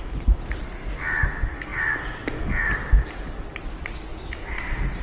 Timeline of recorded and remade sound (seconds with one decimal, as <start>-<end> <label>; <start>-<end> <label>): 0.0-5.0 recorded